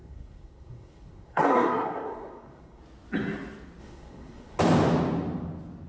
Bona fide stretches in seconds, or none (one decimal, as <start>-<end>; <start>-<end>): 2.8-3.8; 4.6-5.9